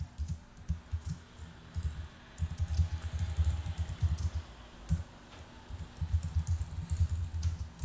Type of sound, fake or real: real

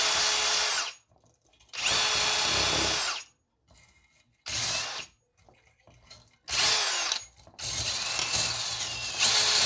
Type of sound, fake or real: real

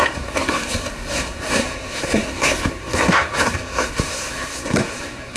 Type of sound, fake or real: fake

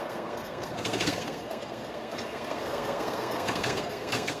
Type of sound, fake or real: fake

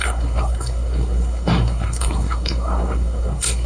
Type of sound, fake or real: fake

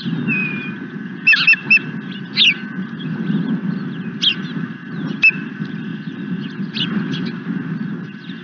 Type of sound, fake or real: real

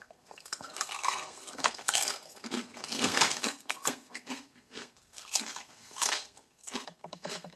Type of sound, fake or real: fake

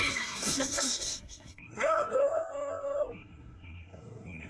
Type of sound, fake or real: fake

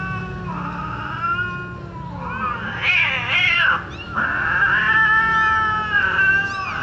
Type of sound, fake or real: real